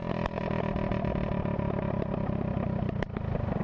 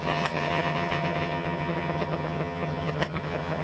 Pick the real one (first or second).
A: first